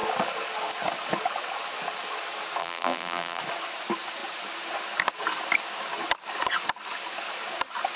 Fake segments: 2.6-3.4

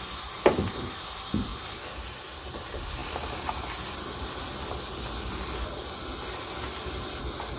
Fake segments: none

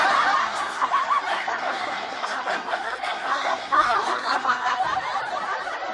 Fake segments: 0.4-0.9; 1.3-4.8